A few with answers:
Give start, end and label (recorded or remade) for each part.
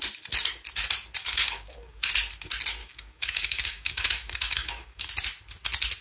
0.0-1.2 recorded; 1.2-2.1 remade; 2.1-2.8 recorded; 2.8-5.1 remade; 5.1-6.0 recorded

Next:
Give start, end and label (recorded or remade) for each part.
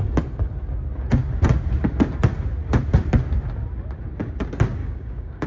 0.0-4.8 recorded; 4.8-5.5 remade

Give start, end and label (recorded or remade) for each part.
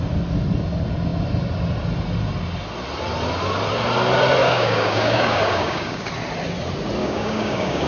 0.0-4.4 recorded; 4.4-6.1 remade; 6.1-7.0 recorded; 7.0-7.9 remade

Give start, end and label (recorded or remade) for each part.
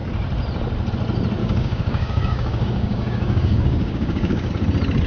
0.0-1.4 recorded; 1.4-4.5 remade; 4.5-5.1 recorded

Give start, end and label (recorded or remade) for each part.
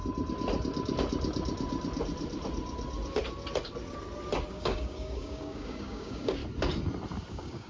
0.0-4.5 recorded; 4.5-6.4 remade; 6.4-7.3 recorded; 7.3-7.7 remade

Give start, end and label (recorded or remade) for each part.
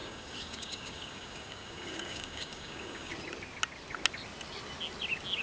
0.0-3.1 remade; 3.1-5.4 recorded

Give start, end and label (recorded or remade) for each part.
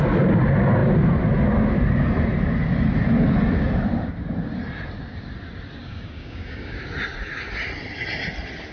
0.0-5.8 recorded; 5.8-6.8 remade; 6.8-8.7 recorded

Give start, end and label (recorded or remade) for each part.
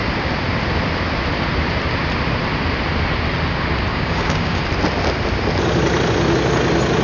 0.0-3.9 recorded; 3.9-4.6 remade; 4.6-7.0 recorded